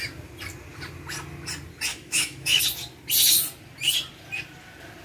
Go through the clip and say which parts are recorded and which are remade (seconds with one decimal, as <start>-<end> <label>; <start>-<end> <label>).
0.0-1.9 recorded; 1.9-2.6 remade; 2.6-5.0 recorded

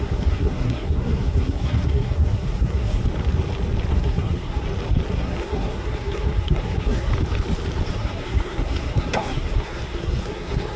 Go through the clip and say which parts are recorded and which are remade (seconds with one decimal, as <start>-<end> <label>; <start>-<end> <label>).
0.0-3.0 remade; 3.0-3.9 recorded; 3.9-4.6 remade; 4.6-5.1 recorded; 5.1-7.1 remade; 7.1-7.9 recorded; 7.9-10.8 remade